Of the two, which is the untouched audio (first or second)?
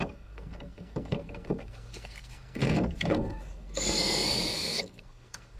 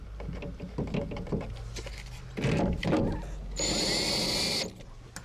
second